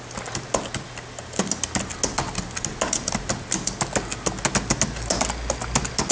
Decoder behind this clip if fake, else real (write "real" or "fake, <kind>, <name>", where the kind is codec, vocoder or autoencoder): real